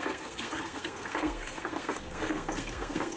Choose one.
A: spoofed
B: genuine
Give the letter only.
A